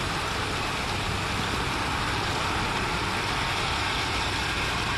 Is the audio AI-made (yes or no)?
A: no